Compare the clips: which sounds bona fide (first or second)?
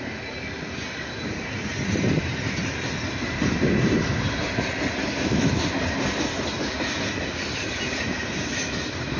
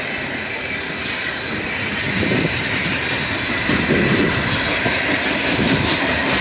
first